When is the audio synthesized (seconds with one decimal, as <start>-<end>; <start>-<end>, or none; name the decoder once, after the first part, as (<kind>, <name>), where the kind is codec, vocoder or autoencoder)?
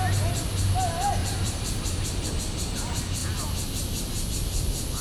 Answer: 1.2-2.3 (vocoder, BigVGAN v2)